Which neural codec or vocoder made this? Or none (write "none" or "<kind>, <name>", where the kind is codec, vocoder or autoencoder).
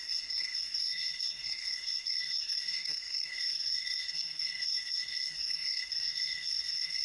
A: codec, SNAC